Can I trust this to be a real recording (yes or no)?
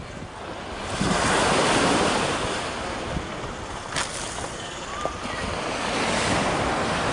yes